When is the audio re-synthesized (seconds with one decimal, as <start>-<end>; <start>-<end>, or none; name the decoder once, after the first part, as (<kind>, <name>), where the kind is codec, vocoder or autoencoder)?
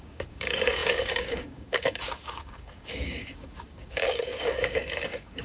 0.0-5.4 (codec, DAC)